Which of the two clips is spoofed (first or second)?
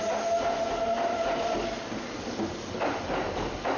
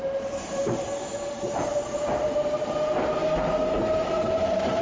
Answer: second